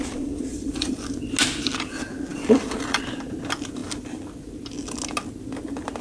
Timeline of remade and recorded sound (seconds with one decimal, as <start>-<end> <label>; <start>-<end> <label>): 0.0-0.5 recorded; 0.5-1.0 remade; 1.0-2.3 recorded; 2.3-3.0 remade; 3.0-6.0 recorded